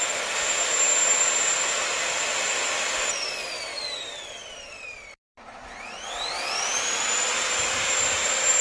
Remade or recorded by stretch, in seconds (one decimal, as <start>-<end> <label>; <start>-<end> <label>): 0.0-3.7 remade; 3.7-4.2 recorded; 4.2-8.6 remade